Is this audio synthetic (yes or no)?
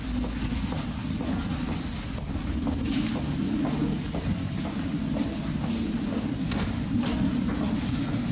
no